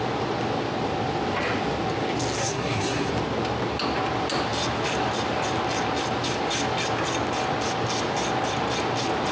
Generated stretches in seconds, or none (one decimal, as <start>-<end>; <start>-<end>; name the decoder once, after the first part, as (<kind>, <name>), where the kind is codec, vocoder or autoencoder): 2.4-3.1 (codec, SNAC)